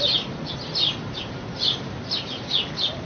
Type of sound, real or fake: real